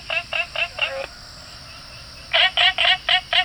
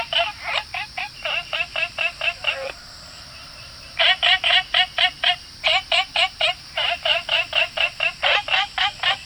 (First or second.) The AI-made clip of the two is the second